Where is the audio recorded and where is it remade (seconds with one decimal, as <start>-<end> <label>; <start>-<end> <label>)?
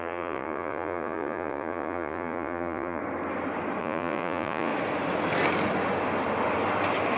0.0-3.0 remade; 3.0-3.8 recorded; 3.8-4.7 remade; 4.7-7.2 recorded